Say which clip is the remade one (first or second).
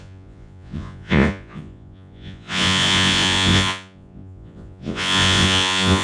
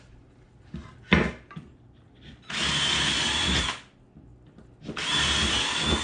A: first